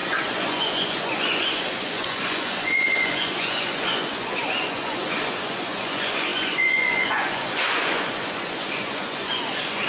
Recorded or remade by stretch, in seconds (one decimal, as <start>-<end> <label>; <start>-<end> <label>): 0.0-9.9 remade